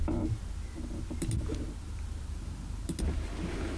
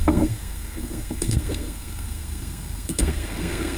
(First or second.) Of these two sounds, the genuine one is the first